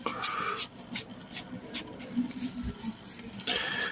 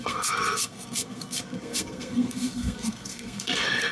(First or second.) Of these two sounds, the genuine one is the first